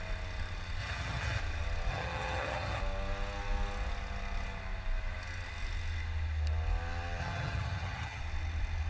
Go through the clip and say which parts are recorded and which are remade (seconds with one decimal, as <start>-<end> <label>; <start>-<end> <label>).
0.0-0.8 recorded; 0.8-1.4 remade; 1.4-1.9 recorded; 1.9-2.8 remade; 2.8-7.2 recorded; 7.2-8.2 remade; 8.2-8.9 recorded